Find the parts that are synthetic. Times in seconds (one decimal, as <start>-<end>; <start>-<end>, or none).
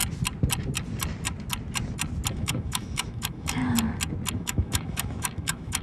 2.3-3.6; 4.3-5.8